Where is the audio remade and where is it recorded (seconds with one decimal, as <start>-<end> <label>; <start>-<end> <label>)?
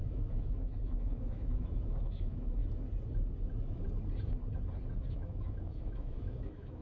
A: 0.0-2.6 remade; 2.6-5.1 recorded; 5.1-6.8 remade